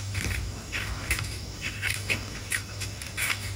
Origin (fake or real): fake